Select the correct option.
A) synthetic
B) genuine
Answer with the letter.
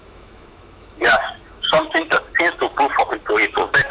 A